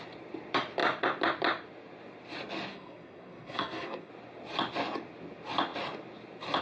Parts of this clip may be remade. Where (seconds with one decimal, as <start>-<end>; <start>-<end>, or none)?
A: 2.7-4.1